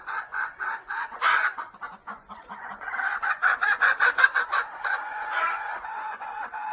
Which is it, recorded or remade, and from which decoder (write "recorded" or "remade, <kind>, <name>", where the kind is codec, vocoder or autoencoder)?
remade, vocoder, Vocos